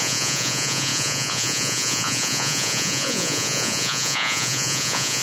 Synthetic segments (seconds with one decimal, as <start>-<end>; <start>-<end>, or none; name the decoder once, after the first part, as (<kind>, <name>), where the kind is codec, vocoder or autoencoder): 0.0-5.2 (vocoder, Vocos)

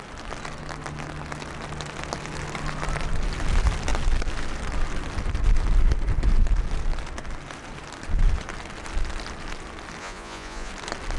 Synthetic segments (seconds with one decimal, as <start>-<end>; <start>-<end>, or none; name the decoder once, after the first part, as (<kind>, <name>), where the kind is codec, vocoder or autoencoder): 10.0-10.7 (vocoder, Vocos)

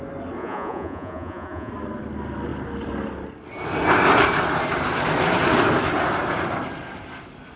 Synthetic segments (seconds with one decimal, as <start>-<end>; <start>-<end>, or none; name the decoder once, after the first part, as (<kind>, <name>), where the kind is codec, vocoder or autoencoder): 0.4-1.7 (vocoder, Vocos)

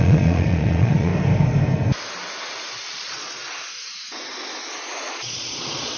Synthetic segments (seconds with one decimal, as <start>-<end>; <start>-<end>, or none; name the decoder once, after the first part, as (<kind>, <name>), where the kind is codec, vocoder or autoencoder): 0.0-1.1 (vocoder, Vocos); 2.9-3.4; 4.8-6.0

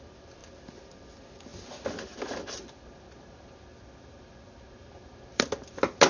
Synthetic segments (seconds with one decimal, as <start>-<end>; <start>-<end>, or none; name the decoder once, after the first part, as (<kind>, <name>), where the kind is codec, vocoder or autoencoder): none

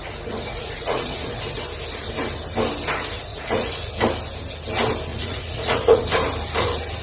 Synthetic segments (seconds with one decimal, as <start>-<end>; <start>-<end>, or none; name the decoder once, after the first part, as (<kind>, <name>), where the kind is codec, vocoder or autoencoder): 0.5-1.3 (vocoder, Vocos); 3.3-3.9; 5.1-6.0

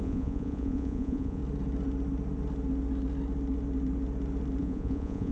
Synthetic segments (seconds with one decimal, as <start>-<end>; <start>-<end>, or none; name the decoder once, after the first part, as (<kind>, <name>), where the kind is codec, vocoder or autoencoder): 0.0-1.4 (vocoder, Vocos); 4.6-5.3

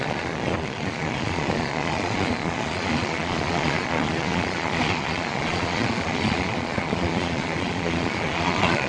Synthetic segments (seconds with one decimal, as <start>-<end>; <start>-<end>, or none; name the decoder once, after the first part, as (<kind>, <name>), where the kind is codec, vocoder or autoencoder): 0.0-8.9 (vocoder, Vocos)